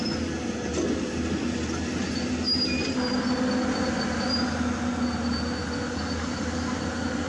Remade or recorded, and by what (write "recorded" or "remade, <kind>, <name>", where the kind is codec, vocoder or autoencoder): recorded